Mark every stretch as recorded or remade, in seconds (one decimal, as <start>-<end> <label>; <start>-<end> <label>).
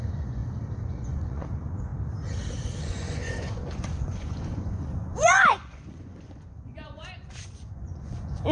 0.0-0.4 remade; 0.4-0.9 recorded; 0.9-1.9 remade; 1.9-2.8 recorded; 2.8-8.5 remade